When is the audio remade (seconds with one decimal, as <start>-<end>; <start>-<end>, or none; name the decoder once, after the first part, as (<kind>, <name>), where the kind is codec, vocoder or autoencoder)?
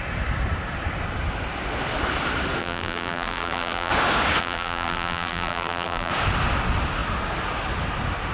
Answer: 2.6-3.9 (vocoder, BigVGAN v2); 4.4-6.1